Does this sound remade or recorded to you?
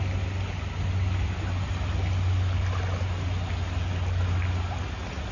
recorded